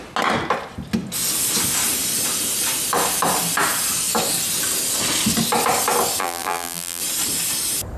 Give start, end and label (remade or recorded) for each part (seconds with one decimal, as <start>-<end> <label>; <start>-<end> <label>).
0.0-6.2 recorded; 6.2-7.0 remade; 7.0-8.0 recorded